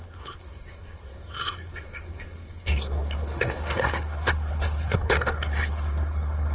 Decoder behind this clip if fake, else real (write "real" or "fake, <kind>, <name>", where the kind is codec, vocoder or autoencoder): fake, codec, SNAC